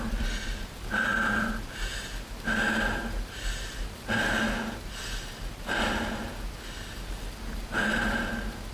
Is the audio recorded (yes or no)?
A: yes